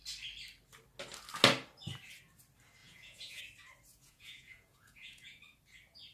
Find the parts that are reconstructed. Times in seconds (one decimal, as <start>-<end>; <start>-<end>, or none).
2.8-3.4; 3.9-5.4